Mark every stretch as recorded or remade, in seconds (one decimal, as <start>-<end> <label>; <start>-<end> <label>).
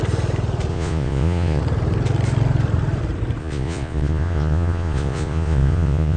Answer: 0.0-0.7 recorded; 0.7-1.6 remade; 1.6-3.4 recorded; 3.4-6.2 remade